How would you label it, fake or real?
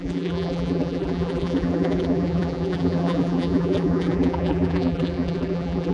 fake